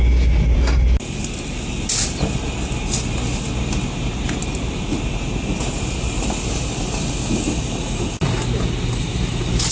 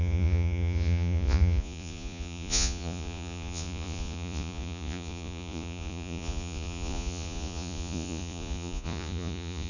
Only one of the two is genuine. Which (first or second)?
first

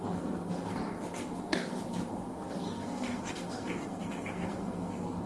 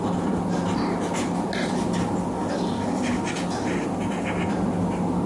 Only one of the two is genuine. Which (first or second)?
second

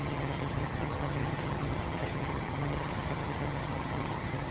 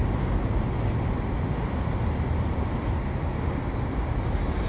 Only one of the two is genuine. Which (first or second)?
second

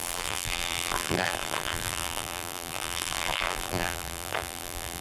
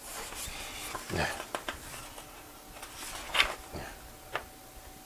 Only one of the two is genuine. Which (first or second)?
second